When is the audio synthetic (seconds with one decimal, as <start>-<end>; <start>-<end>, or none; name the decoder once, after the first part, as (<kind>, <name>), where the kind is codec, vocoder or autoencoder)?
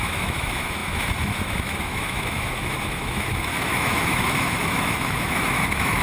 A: 0.0-6.0 (autoencoder, DAC-VAE)